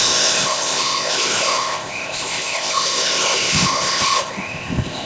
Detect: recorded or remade remade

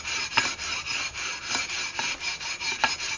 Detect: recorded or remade recorded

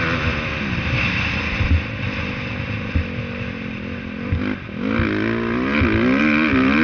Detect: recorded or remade recorded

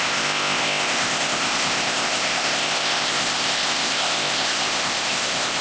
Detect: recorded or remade remade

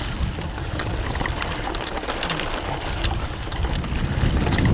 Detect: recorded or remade recorded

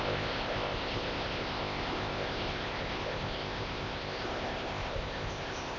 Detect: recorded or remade remade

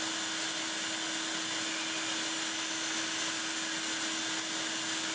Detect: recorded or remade recorded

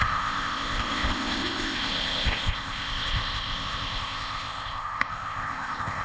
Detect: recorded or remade remade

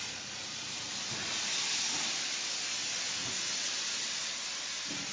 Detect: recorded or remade recorded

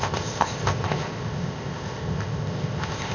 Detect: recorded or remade remade